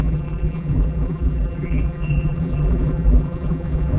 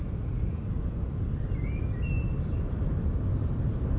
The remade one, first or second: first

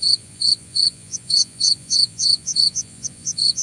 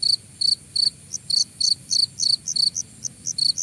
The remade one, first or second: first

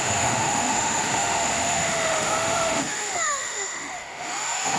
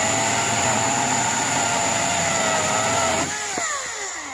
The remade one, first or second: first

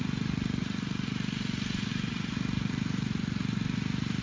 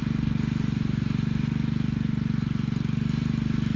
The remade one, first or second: first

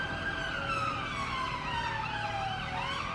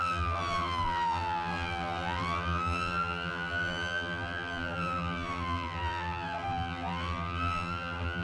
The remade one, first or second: second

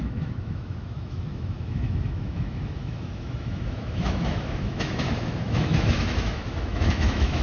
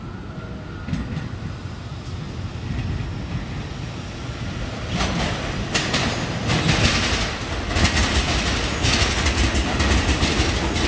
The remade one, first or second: first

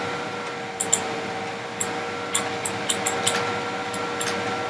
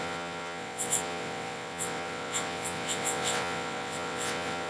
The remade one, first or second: second